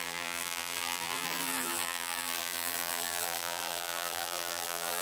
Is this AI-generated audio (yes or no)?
yes